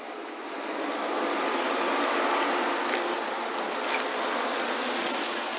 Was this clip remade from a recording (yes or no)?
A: no